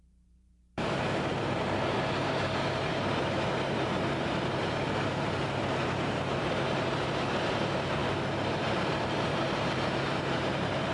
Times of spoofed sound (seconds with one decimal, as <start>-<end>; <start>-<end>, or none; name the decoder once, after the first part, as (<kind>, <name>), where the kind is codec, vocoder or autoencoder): 0.0-8.0 (vocoder, BigVGAN v2); 8.6-10.9